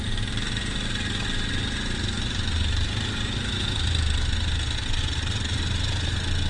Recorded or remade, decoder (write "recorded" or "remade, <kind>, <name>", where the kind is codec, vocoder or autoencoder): recorded